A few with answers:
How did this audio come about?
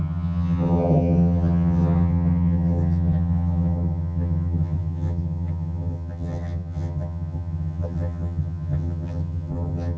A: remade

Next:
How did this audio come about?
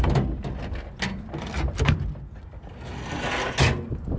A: recorded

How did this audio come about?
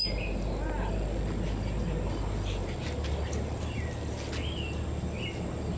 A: recorded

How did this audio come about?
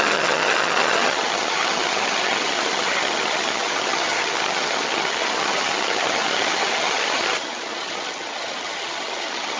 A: remade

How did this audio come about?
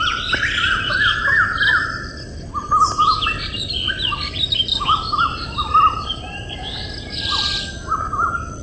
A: recorded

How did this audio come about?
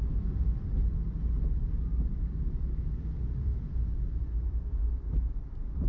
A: recorded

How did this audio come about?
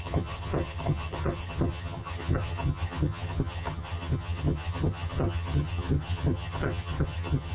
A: remade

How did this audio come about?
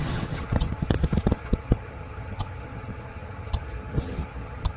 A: remade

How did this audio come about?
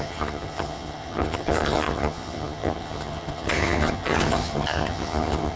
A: remade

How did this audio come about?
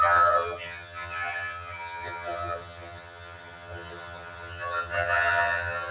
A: remade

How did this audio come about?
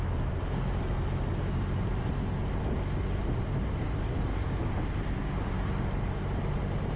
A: recorded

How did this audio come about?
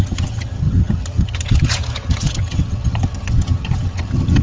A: remade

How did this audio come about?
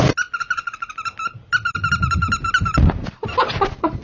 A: recorded